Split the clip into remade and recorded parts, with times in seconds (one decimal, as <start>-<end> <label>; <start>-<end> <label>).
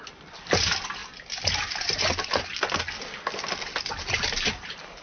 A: 0.0-5.0 recorded